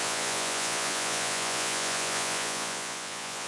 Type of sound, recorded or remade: remade